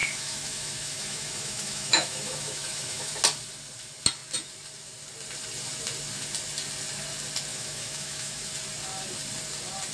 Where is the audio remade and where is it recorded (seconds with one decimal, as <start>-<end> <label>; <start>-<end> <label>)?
0.0-3.1 remade; 3.1-7.5 recorded; 7.5-8.5 remade; 8.5-9.9 recorded